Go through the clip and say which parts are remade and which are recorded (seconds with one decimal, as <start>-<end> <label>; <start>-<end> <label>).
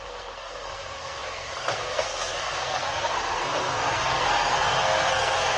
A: 0.0-5.6 remade